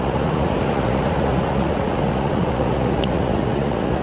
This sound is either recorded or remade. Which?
remade